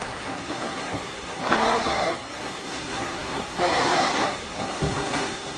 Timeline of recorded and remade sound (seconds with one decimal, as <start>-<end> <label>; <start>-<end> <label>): 0.0-5.6 remade